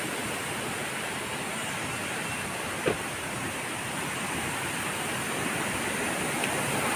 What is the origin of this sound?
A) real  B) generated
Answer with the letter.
A